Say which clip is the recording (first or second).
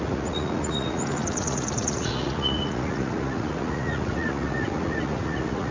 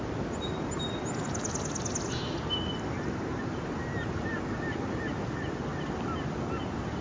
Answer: second